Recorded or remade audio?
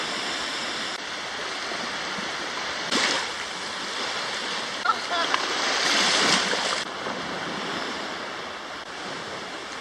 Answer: recorded